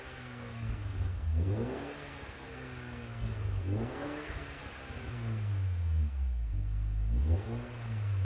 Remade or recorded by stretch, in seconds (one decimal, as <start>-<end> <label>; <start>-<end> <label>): 0.0-4.6 remade; 4.6-5.1 recorded; 5.1-8.2 remade

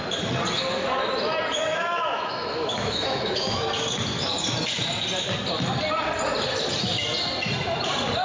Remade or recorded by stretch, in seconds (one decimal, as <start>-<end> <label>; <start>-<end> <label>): 0.0-1.6 recorded; 1.6-3.7 remade; 3.7-8.2 recorded